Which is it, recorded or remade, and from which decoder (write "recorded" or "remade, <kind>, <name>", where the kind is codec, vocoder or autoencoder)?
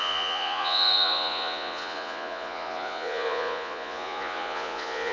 remade, vocoder, Vocos